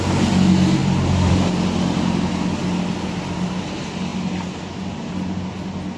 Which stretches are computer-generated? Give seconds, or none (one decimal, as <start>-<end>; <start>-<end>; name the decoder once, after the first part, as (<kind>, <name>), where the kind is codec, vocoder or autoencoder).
0.8-1.8 (vocoder, BigVGAN v2)